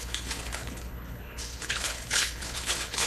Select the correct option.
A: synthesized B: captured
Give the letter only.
A